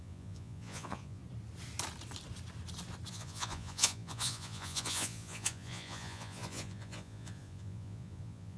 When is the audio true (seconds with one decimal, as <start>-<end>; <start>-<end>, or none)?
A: 1.2-3.1